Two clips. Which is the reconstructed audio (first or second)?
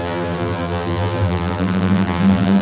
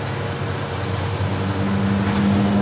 first